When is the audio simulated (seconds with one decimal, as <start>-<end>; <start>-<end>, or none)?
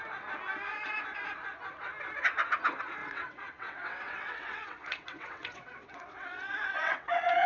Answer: 3.0-7.5